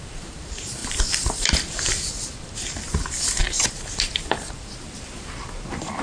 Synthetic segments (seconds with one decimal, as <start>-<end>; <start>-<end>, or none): 0.0-6.0

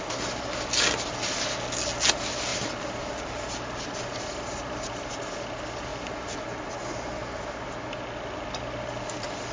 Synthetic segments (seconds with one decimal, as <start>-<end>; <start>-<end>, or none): 2.5-5.1; 5.9-6.7